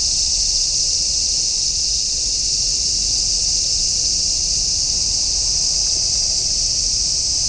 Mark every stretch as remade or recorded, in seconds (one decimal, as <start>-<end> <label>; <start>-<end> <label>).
0.0-7.5 recorded